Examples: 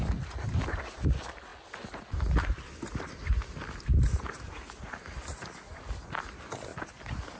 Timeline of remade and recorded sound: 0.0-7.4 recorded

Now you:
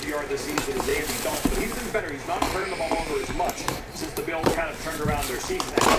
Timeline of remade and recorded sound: 0.0-0.9 recorded; 0.9-2.0 remade; 2.0-2.6 recorded; 2.6-6.0 remade

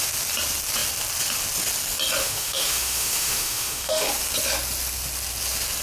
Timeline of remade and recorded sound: 0.0-2.2 recorded; 2.2-4.1 remade; 4.1-5.8 recorded